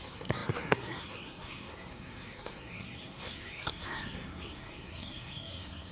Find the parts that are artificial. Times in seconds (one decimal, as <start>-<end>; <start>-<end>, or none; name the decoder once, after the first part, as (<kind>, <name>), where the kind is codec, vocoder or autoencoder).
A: 0.0-5.9 (codec, SNAC)